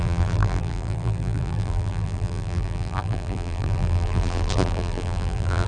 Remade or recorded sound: remade